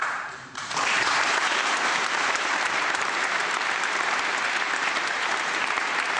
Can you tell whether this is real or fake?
fake